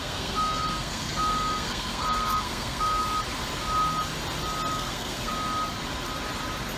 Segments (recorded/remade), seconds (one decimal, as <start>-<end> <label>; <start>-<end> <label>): 0.0-3.0 remade; 3.0-4.7 recorded; 4.7-5.3 remade; 5.3-6.8 recorded